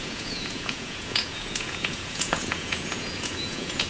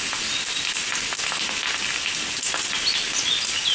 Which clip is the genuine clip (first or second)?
second